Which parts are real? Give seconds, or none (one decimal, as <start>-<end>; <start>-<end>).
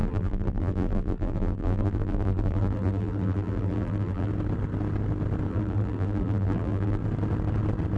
4.3-5.5; 7.0-8.0